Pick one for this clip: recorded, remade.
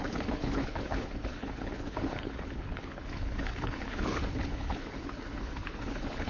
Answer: remade